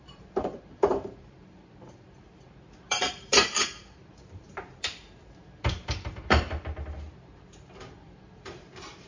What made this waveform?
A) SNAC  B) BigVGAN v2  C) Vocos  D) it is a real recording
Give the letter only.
B